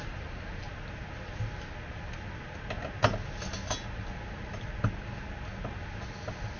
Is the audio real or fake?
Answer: real